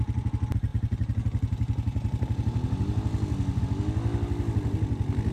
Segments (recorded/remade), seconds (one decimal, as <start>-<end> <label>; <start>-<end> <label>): 0.0-5.3 recorded